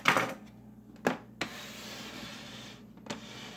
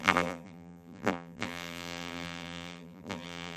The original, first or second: first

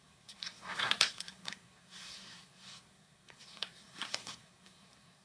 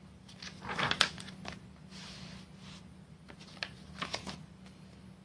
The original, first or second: second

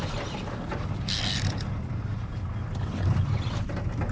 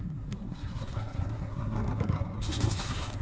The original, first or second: first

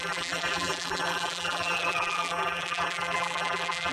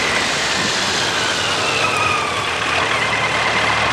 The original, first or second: second